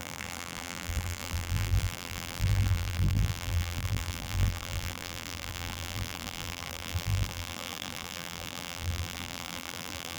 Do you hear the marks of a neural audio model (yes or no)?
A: yes